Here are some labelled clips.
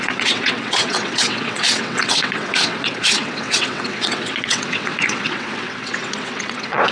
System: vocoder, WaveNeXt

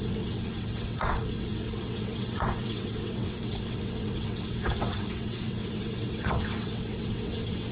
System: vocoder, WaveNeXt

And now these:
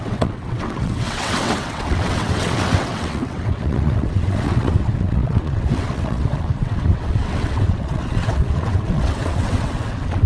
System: vocoder, WaveNeXt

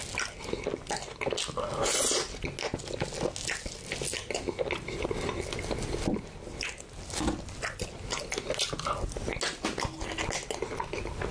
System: none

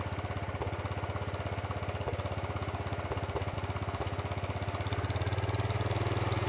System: none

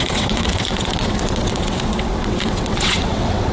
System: vocoder, WaveNeXt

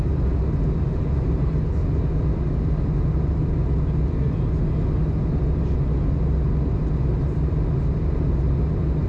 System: none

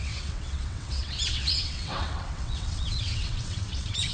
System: vocoder, WaveNeXt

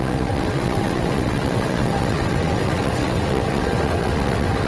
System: vocoder, WaveNeXt